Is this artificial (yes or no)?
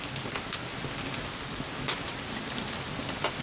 no